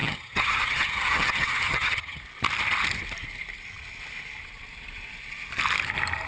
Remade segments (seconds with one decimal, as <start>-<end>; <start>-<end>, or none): 0.0-2.2